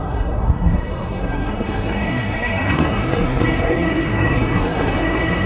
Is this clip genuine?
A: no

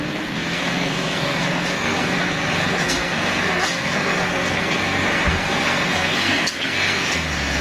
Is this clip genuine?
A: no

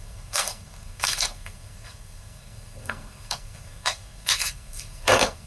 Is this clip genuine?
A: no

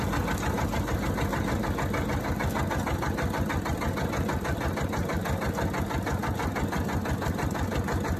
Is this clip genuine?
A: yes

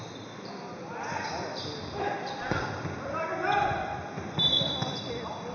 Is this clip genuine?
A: yes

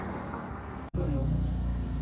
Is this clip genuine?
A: no